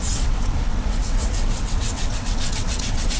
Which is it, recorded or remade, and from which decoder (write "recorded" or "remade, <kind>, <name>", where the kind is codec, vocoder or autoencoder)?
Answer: remade, vocoder, WaveNeXt